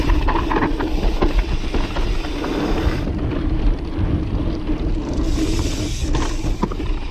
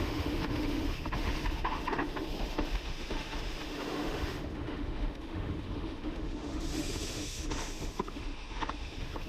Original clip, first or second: first